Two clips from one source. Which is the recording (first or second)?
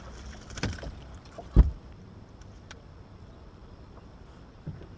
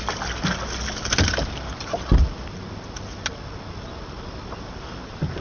second